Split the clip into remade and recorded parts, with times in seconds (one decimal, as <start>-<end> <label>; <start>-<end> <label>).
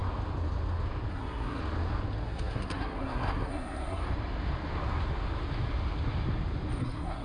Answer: 0.0-1.1 recorded; 1.1-1.6 remade; 1.6-2.2 recorded; 2.2-4.0 remade; 4.0-6.8 recorded; 6.8-7.2 remade